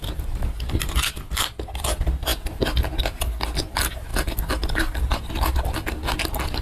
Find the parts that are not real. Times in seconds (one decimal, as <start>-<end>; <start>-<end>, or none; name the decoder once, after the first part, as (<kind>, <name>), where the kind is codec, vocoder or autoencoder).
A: none